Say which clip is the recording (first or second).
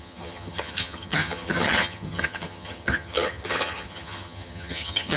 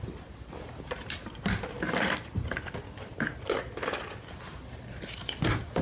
second